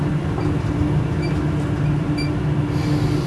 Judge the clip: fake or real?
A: real